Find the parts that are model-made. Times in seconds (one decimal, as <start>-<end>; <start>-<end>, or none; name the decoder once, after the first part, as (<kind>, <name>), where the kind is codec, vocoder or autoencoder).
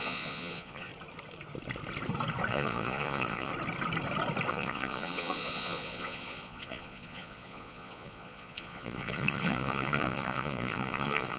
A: 0.0-0.9 (vocoder, Vocos); 2.5-3.5; 4.5-11.4